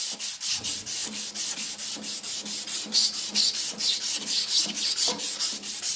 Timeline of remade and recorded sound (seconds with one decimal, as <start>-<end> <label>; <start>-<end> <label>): 0.0-6.0 recorded